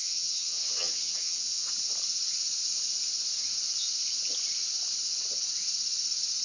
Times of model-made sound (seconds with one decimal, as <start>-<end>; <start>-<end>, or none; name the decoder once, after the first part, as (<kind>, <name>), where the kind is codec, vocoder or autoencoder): 0.0-1.7 (vocoder, HiFi-GAN)